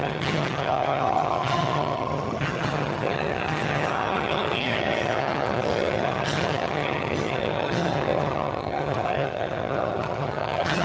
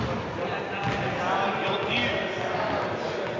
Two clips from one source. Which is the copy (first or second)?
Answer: first